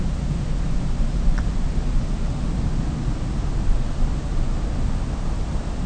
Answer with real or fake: real